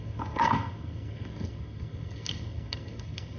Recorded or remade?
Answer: remade